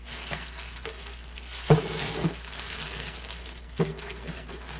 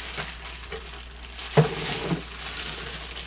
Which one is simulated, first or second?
first